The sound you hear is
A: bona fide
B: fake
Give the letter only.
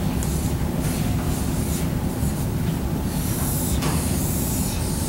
A